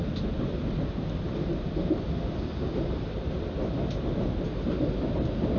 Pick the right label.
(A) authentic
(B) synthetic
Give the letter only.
A